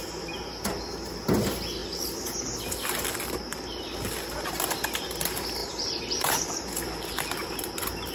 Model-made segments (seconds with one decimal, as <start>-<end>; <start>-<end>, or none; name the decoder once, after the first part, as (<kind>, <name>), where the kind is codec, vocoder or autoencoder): 5.6-6.3 (vocoder, BigVGAN v2)